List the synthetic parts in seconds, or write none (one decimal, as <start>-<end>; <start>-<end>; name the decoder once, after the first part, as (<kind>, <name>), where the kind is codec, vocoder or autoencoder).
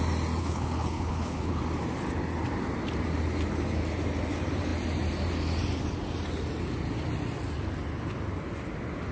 0.4-1.6 (codec, HILCodec)